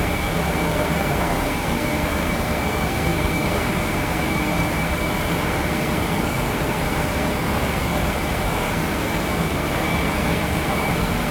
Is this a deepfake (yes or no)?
yes